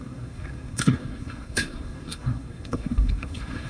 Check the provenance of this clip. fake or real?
fake